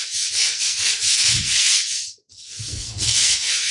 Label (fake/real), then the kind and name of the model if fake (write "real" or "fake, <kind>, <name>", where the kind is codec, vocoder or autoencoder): fake, codec, SNAC